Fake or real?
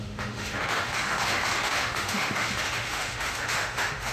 fake